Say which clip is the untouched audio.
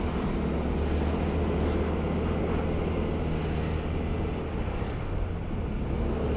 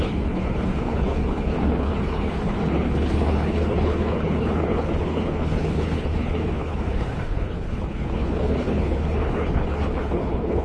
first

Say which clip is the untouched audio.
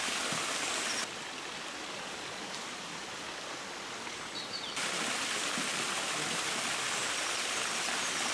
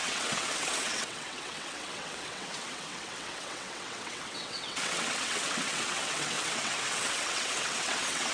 first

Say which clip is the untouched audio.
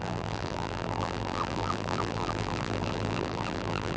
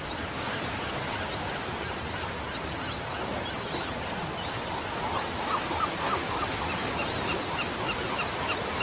second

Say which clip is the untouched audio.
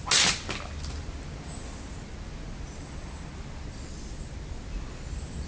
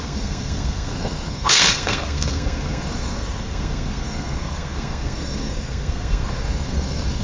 first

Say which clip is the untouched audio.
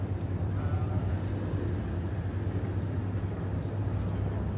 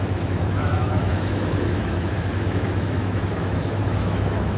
first